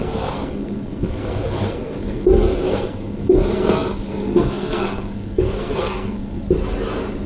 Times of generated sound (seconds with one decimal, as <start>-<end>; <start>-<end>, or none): 0.0-6.4